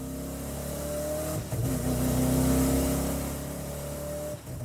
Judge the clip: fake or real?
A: real